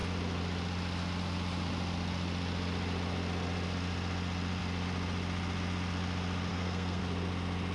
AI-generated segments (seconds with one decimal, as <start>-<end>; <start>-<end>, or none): 6.5-7.0